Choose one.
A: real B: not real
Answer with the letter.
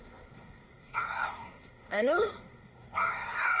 B